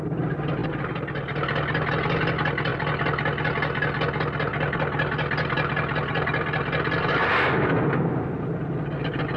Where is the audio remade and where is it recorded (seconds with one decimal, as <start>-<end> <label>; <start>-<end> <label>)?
0.0-0.6 recorded; 0.6-1.9 remade; 1.9-2.7 recorded; 2.7-3.5 remade; 3.5-4.5 recorded; 4.5-7.3 remade; 7.3-9.4 recorded